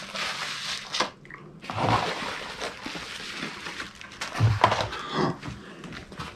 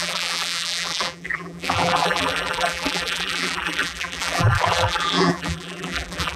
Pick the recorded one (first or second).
first